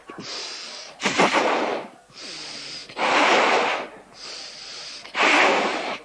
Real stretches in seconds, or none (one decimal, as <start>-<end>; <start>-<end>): 0.0-0.4; 1.0-1.7; 2.2-6.0